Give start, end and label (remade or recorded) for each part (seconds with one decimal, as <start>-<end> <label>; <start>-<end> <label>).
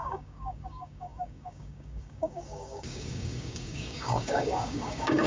0.0-5.3 remade